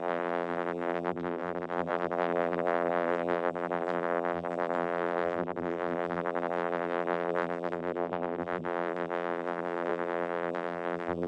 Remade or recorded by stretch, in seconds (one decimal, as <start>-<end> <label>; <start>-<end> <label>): 0.0-11.3 remade